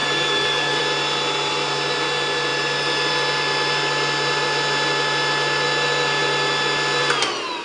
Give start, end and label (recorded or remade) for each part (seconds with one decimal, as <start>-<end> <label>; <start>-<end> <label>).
0.0-0.8 remade; 0.8-7.6 recorded